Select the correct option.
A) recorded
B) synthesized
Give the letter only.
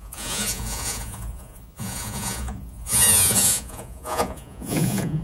B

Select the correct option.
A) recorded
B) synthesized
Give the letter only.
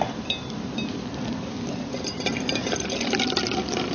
A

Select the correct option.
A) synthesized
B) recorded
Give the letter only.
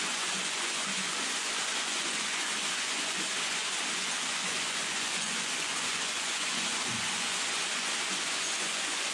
A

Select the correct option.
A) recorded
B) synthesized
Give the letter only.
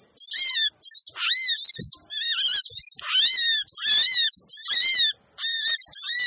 A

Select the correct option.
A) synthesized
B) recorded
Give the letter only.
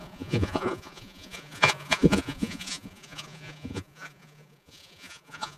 A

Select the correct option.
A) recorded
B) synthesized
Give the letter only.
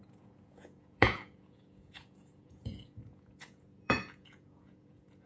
B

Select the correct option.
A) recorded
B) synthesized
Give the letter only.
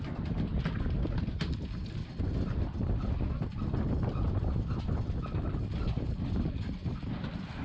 A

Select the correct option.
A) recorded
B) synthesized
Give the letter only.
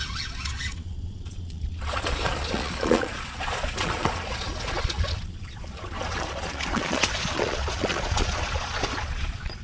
B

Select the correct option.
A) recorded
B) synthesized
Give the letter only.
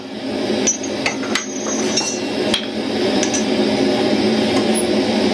A